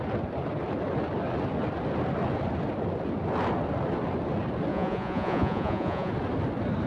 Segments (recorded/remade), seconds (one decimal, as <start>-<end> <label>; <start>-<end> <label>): 0.0-4.7 recorded; 4.7-6.1 remade; 6.1-6.9 recorded